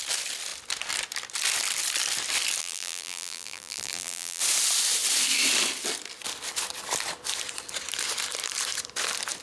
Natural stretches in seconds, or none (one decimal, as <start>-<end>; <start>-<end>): 0.0-2.6; 4.4-9.4